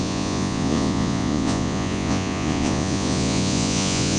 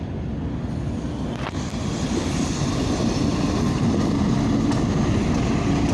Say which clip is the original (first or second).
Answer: second